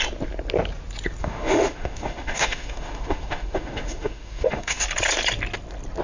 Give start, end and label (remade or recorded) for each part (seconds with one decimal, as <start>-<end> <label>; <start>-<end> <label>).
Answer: 0.0-1.2 recorded; 1.2-4.8 remade; 4.8-6.0 recorded

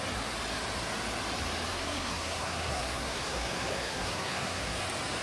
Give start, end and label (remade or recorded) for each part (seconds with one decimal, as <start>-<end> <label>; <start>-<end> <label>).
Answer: 0.0-1.7 recorded; 1.7-4.8 remade; 4.8-5.2 recorded

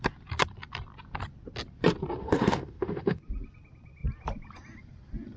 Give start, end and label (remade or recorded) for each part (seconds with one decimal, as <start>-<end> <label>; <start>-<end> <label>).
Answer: 0.0-2.2 recorded; 2.2-3.2 remade; 3.2-5.4 recorded

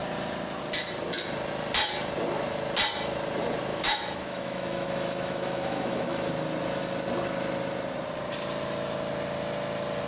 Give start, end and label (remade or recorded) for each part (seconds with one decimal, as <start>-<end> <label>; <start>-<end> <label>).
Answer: 0.0-3.7 recorded; 3.7-6.3 remade; 6.3-10.1 recorded

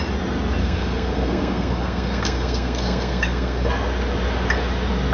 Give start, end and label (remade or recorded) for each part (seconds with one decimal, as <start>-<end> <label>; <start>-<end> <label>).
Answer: 0.0-0.6 recorded; 0.6-3.7 remade; 3.7-5.1 recorded